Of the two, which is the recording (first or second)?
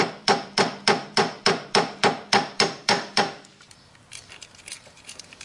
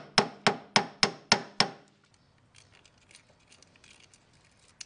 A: second